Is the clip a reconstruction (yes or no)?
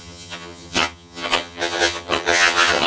yes